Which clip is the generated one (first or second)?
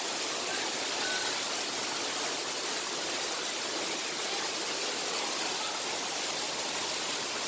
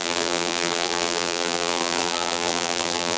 second